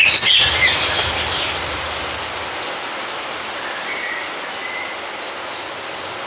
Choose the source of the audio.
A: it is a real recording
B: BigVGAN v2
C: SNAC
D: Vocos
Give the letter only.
A